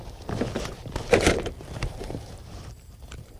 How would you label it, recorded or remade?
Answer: remade